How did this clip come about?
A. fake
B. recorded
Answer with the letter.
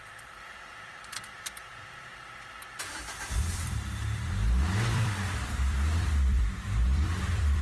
A